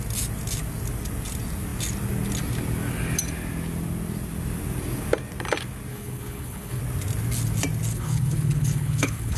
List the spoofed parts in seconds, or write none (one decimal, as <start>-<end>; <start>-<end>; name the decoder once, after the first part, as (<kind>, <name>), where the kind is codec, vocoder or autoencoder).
5.9-6.8 (codec, HILCodec); 7.9-9.4